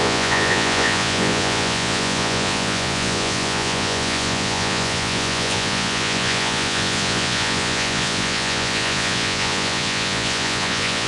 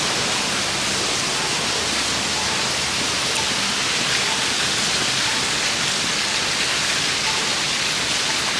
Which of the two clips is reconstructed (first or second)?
first